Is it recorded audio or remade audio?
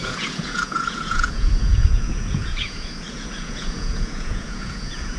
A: remade